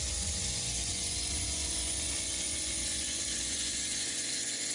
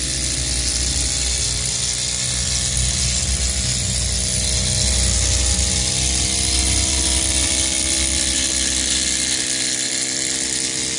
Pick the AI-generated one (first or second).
first